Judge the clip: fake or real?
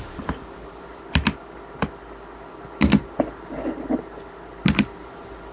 real